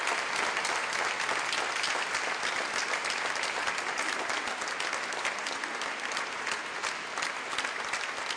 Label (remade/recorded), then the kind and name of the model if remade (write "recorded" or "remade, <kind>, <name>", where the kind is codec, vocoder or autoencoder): recorded